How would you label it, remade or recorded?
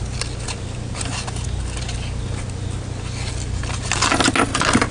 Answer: recorded